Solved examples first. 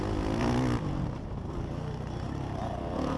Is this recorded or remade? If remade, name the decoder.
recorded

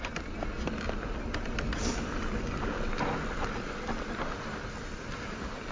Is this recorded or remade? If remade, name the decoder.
recorded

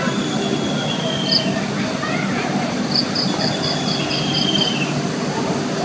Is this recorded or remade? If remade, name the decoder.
recorded